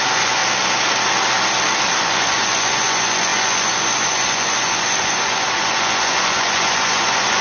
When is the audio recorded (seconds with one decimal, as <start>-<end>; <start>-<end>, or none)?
0.4-2.0